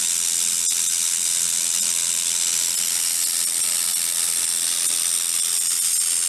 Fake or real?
real